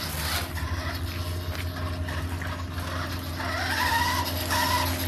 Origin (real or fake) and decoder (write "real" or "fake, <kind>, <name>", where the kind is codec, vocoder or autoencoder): real